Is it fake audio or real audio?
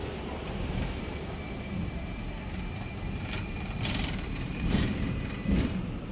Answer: fake